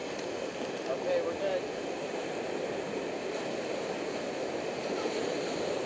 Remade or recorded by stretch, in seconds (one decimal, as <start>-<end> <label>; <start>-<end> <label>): 0.0-5.9 recorded